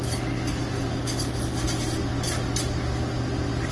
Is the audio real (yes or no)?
yes